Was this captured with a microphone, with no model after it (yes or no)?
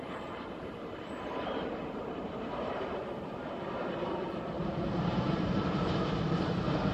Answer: no